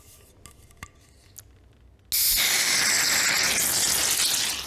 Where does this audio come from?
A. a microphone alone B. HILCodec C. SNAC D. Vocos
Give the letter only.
A